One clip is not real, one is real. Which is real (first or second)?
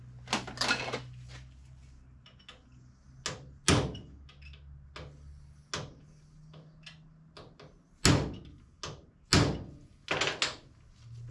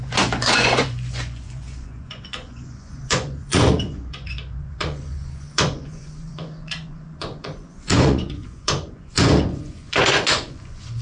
first